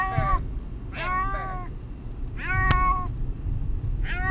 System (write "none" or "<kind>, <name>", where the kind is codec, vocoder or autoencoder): none